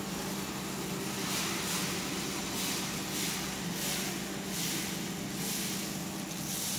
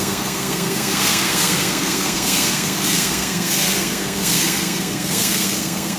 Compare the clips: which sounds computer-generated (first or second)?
second